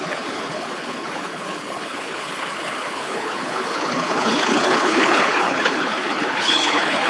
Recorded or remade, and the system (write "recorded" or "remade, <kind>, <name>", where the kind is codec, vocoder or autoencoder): remade, codec, HILCodec